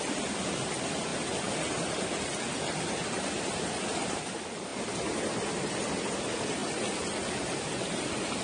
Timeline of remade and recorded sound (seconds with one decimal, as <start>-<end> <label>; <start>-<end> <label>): 0.0-8.4 recorded